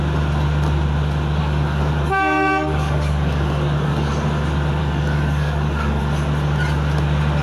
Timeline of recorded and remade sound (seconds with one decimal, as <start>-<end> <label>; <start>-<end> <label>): 0.0-1.4 recorded; 1.4-4.1 remade; 4.1-4.8 recorded; 4.8-6.0 remade; 6.0-7.4 recorded